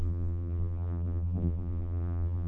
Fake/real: fake